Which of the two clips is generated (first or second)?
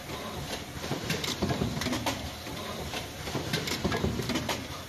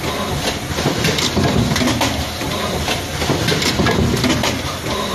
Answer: first